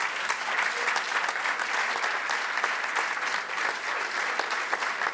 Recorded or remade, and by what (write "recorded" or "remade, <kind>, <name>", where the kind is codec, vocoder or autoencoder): recorded